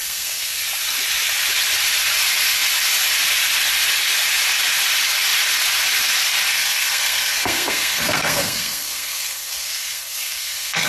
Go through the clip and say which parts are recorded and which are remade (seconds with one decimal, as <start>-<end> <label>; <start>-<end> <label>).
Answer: 0.0-0.6 remade; 0.6-6.5 recorded; 6.5-10.9 remade